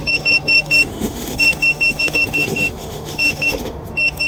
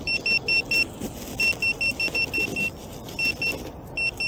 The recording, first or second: second